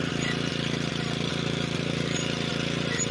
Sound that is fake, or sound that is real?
real